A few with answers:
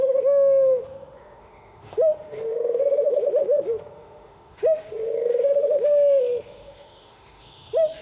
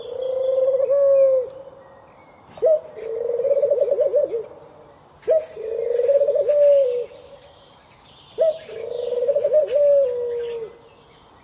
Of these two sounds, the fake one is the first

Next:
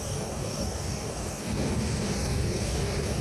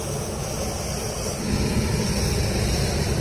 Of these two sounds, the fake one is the first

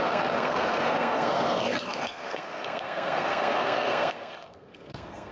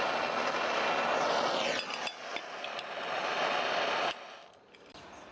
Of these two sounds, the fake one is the first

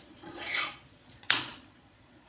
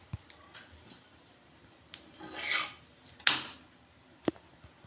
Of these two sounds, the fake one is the first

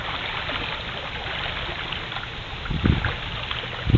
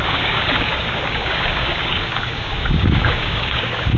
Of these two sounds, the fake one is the second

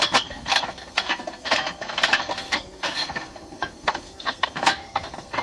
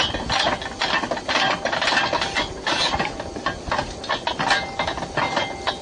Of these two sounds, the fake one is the first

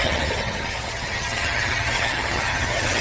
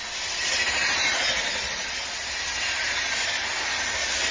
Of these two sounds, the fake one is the first